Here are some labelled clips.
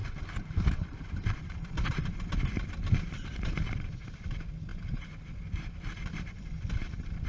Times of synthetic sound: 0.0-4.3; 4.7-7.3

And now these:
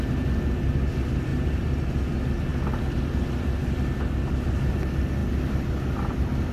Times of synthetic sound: 1.3-1.9

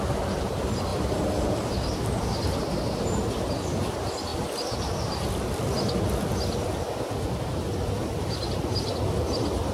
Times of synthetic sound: 0.9-3.4

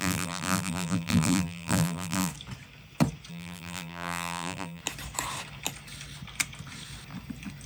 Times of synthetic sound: 0.0-2.3; 3.3-4.8

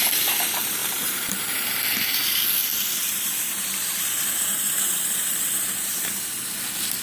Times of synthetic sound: 0.8-1.5; 2.7-6.2